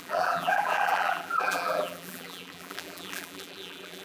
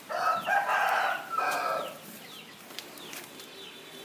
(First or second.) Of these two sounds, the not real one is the first